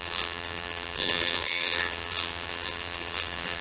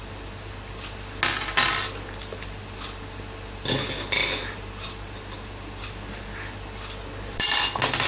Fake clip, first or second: first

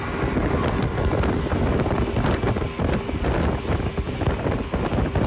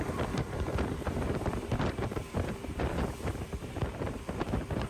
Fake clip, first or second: second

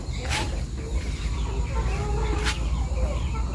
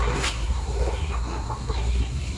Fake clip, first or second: second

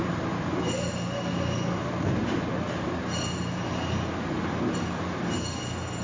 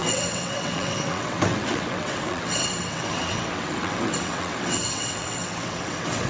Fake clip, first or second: second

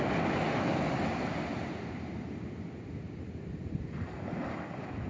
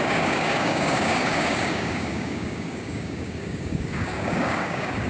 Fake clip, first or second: second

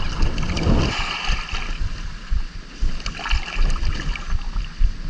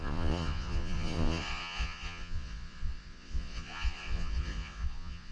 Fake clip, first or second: second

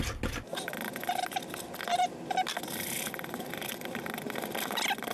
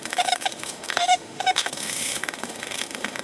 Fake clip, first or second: second